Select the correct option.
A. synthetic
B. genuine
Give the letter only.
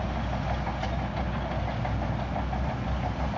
B